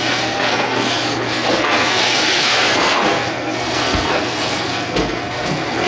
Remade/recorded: remade